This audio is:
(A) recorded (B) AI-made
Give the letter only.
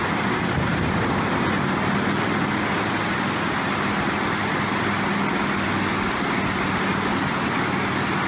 A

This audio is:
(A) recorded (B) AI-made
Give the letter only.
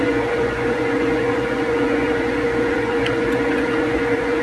B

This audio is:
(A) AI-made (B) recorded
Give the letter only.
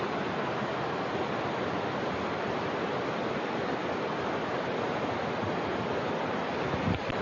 B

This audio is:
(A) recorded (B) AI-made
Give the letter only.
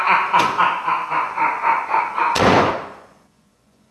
B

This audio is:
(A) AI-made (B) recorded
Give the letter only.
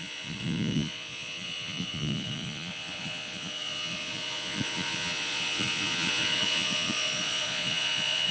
A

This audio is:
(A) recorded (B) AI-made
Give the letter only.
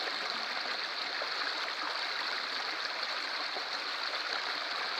A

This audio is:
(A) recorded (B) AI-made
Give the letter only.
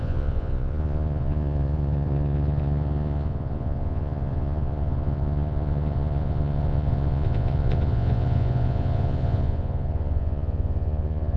B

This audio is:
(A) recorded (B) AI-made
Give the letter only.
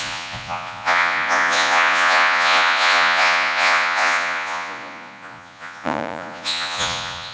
B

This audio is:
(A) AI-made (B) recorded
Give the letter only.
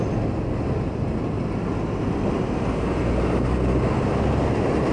B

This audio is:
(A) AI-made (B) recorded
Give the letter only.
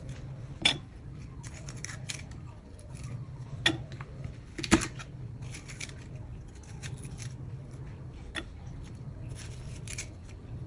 B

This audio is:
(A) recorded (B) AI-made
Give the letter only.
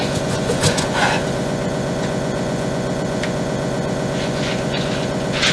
B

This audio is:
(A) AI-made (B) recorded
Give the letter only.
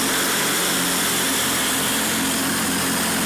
B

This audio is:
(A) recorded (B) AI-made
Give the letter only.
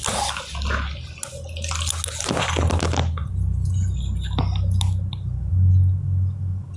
A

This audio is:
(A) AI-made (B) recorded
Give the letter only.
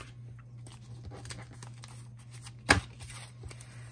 B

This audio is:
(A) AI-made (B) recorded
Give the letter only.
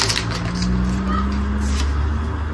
B